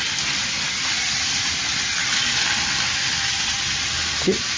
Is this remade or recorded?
recorded